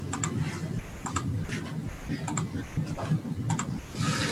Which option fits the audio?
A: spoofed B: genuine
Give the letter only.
B